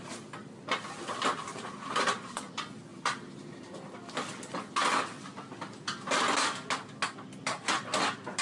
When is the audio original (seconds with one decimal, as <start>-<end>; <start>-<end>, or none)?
0.0-1.4; 2.4-2.9; 3.8-8.4